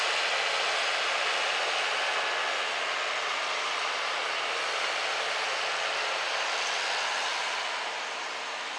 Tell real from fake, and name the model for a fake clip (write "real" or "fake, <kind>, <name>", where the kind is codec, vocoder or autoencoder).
real